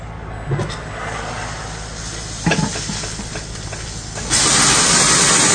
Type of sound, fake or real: real